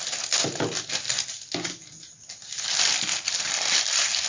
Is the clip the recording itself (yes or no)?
yes